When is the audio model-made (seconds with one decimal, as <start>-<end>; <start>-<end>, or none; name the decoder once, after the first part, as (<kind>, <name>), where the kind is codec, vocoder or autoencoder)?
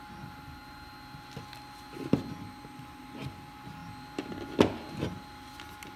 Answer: none